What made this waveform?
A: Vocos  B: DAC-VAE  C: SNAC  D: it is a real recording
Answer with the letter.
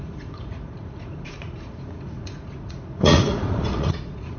A